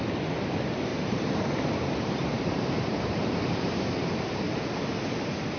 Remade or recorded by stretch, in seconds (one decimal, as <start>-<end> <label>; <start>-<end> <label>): 0.0-0.9 recorded; 0.9-4.3 remade; 4.3-5.6 recorded

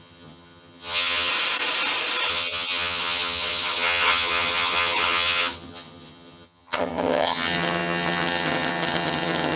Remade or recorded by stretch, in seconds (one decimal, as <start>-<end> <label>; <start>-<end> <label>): 0.0-1.3 remade; 1.3-2.3 recorded; 2.3-9.6 remade

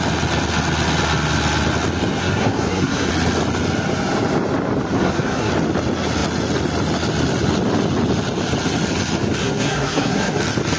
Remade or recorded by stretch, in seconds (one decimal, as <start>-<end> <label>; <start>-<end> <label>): 0.0-2.2 recorded; 2.2-3.1 remade; 3.1-5.0 recorded; 5.0-5.5 remade; 5.5-9.4 recorded; 9.4-10.4 remade; 10.4-10.8 recorded

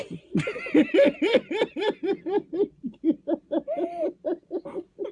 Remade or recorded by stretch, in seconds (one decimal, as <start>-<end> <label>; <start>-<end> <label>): 0.0-5.1 remade

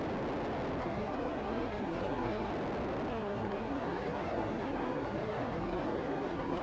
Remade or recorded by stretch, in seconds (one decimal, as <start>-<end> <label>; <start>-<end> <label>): 0.0-0.8 recorded; 0.8-2.5 remade; 2.5-3.1 recorded; 3.1-6.6 remade

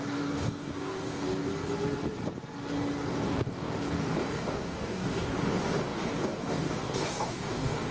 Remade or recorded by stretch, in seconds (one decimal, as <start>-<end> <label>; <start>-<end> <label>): 0.0-1.5 remade; 1.5-3.1 recorded; 3.1-7.9 remade

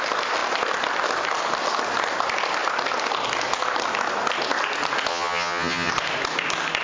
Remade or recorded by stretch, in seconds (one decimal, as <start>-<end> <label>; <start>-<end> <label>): 0.0-5.1 recorded; 5.1-5.9 remade; 5.9-6.8 recorded